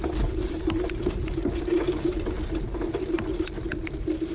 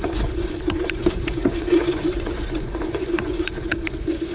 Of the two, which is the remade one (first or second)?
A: second